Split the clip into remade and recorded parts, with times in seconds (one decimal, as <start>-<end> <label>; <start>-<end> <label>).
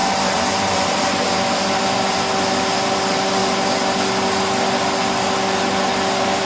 0.0-1.8 remade; 1.8-6.4 recorded